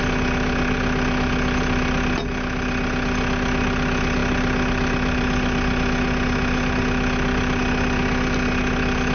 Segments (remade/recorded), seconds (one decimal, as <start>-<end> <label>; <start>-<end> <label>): 0.0-9.1 recorded